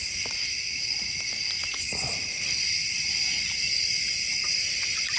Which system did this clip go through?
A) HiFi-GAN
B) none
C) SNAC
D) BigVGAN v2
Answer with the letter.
D